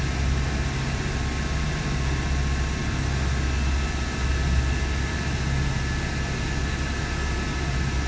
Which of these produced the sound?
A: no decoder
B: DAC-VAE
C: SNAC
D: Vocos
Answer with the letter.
A